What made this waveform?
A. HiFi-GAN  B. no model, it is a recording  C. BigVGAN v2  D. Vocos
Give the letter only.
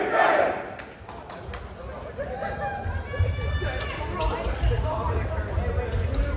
B